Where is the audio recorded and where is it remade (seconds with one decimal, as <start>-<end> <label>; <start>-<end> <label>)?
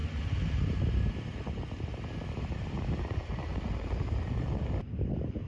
0.0-1.7 recorded; 1.7-3.5 remade; 3.5-5.1 recorded; 5.1-5.5 remade